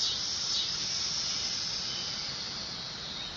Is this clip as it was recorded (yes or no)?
yes